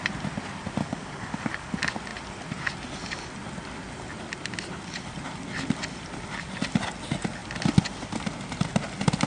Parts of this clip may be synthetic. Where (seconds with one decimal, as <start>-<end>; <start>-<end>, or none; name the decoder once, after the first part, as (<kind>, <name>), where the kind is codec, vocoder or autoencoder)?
0.8-1.7 (codec, DAC)